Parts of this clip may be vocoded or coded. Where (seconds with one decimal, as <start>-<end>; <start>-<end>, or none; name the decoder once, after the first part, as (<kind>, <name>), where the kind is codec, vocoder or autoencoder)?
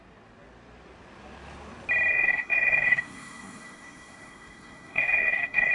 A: 2.1-5.7 (codec, SNAC)